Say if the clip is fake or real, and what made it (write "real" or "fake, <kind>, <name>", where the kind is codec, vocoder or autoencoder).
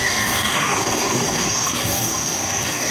fake, codec, DAC